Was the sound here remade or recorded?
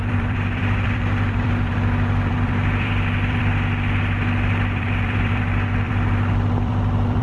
remade